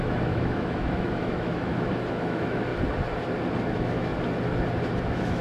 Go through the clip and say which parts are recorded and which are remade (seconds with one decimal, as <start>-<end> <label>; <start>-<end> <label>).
0.0-2.7 remade; 2.7-3.6 recorded; 3.6-4.1 remade; 4.1-5.0 recorded; 5.0-5.4 remade